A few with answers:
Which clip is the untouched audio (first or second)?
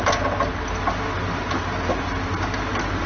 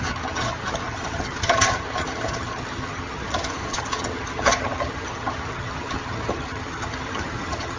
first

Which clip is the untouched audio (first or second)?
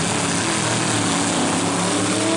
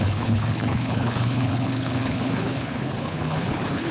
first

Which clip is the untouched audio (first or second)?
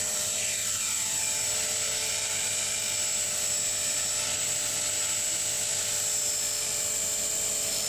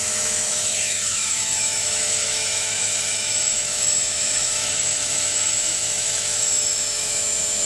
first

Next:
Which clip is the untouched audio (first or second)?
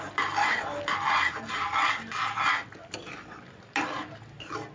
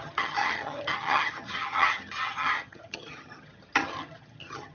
first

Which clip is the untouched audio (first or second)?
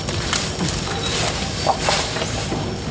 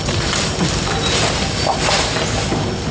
second